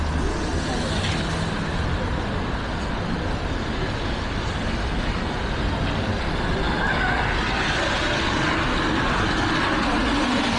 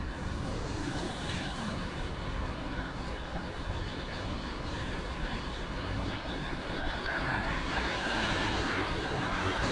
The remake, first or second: second